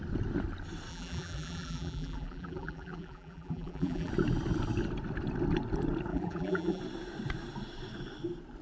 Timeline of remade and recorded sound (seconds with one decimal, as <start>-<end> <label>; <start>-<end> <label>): 0.0-0.9 recorded; 0.9-4.1 remade; 4.1-6.1 recorded; 6.1-6.8 remade; 6.8-8.6 recorded